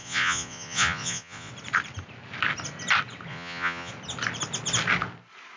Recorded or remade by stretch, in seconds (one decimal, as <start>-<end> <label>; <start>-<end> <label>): 0.0-1.5 remade; 1.5-3.3 recorded; 3.3-3.9 remade; 3.9-5.6 recorded